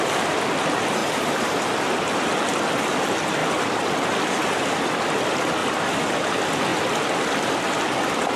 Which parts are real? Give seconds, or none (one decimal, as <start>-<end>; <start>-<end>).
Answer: 0.0-1.0; 2.7-3.4; 3.9-5.6; 6.3-8.4